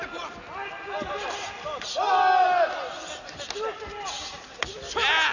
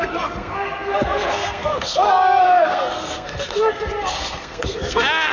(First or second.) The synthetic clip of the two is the second